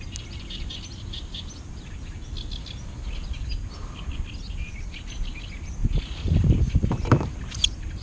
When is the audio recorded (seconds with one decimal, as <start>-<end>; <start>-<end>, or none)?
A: 0.0-8.0